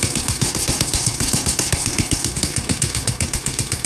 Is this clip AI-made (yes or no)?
yes